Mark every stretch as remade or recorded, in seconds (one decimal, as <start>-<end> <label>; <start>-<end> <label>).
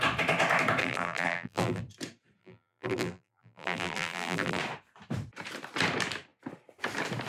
0.0-0.8 recorded; 0.8-1.8 remade; 1.8-2.4 recorded; 2.4-4.6 remade; 4.6-7.3 recorded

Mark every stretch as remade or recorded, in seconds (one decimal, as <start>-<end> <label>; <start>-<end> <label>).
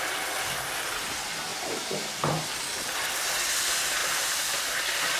0.0-1.5 recorded; 1.5-2.3 remade; 2.3-4.0 recorded; 4.0-4.8 remade; 4.8-5.2 recorded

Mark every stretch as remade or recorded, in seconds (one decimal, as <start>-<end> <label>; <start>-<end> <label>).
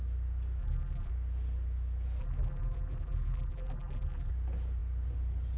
0.0-0.6 recorded; 0.6-1.1 remade; 1.1-2.2 recorded; 2.2-4.3 remade; 4.3-5.6 recorded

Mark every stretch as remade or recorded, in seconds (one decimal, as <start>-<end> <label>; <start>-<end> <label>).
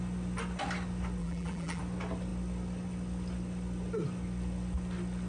0.0-1.2 recorded; 1.2-1.8 remade; 1.8-5.3 recorded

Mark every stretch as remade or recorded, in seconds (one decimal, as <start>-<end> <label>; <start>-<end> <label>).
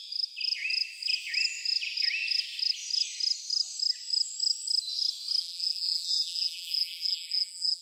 0.0-5.4 recorded; 5.4-7.8 remade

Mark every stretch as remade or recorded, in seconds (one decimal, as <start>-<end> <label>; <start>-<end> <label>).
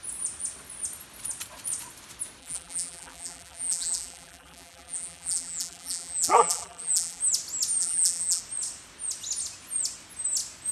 0.0-2.4 recorded; 2.4-7.2 remade; 7.2-7.8 recorded; 7.8-8.4 remade; 8.4-10.7 recorded